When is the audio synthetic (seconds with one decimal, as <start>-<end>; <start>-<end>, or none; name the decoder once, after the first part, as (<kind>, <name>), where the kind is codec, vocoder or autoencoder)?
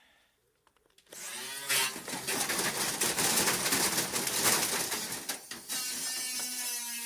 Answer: none